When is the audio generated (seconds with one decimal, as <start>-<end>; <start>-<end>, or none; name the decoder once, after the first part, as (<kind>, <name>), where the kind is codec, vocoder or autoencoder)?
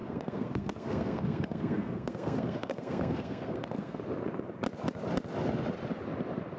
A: 0.0-4.0 (codec, SNAC)